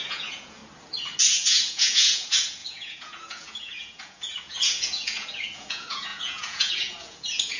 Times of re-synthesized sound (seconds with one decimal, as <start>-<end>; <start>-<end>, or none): 0.0-0.6; 1.3-7.6

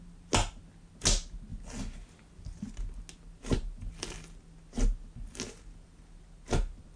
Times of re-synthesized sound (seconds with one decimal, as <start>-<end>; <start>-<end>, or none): none